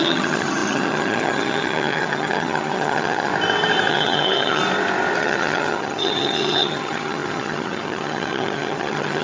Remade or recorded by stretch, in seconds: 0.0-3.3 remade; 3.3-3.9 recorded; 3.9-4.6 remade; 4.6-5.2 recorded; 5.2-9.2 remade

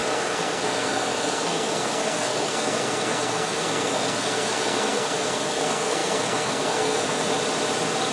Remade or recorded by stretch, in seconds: 0.0-7.3 remade; 7.3-8.1 recorded

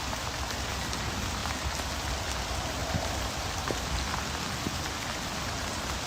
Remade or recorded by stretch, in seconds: 0.0-1.4 recorded; 1.4-2.2 remade; 2.2-2.8 recorded; 2.8-3.6 remade; 3.6-6.1 recorded

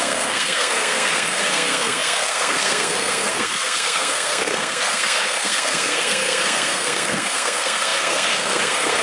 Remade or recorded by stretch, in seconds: 0.0-9.0 remade

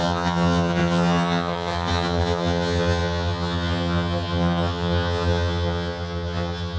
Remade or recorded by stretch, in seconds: 0.0-6.8 remade

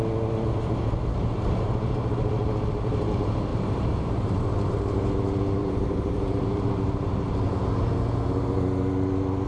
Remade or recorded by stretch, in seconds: 0.0-1.2 recorded; 1.2-1.7 remade; 1.7-3.5 recorded; 3.5-4.4 remade; 4.4-5.6 recorded; 5.6-6.7 remade; 6.7-9.5 recorded